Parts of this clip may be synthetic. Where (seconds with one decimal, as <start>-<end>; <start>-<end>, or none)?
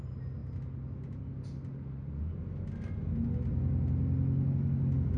none